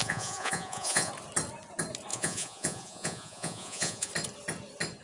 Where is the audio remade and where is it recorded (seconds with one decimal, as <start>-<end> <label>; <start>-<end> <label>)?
0.0-1.1 remade; 1.1-2.1 recorded; 2.1-4.1 remade; 4.1-5.0 recorded